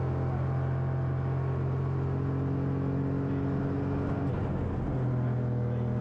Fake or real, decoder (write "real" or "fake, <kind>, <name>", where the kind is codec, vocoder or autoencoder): real